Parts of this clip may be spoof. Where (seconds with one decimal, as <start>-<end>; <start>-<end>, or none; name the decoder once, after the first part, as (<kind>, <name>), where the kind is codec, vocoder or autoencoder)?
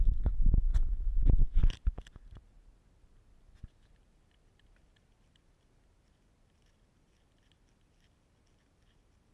none